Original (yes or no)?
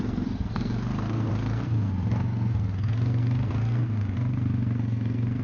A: no